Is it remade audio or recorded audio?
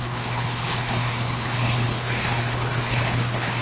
remade